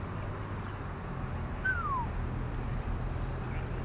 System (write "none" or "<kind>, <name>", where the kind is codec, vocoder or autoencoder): none